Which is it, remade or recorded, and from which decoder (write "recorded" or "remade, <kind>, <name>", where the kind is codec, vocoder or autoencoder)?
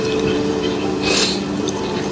remade, vocoder, BigVGAN v2